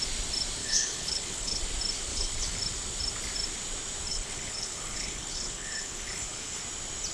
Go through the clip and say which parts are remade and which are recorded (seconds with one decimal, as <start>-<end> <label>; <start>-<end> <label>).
0.0-0.6 recorded; 0.6-1.6 remade; 1.6-2.1 recorded; 2.1-2.6 remade; 2.6-4.1 recorded; 4.1-6.6 remade; 6.6-7.1 recorded